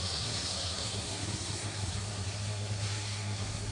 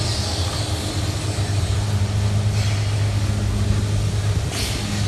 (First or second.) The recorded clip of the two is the second